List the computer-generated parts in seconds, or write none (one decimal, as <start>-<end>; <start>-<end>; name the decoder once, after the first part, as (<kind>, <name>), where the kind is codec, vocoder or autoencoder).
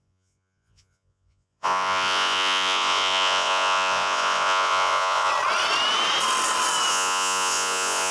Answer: 0.0-5.3 (vocoder, Vocos); 6.9-8.1